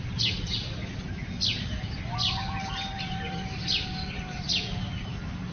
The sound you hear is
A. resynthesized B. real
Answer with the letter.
B